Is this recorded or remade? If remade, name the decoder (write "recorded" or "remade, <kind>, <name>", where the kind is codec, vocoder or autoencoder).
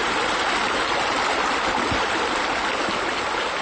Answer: recorded